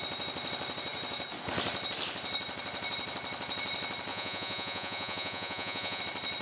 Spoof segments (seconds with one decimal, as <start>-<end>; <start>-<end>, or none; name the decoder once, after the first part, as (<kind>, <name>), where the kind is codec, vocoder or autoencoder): 4.1-6.0 (vocoder, Vocos)